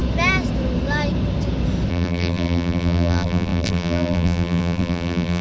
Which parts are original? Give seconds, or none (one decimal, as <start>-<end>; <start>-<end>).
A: 0.0-1.9